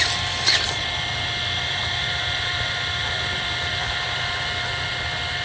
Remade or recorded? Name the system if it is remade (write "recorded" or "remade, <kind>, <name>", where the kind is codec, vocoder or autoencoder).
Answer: remade, vocoder, BigVGAN v2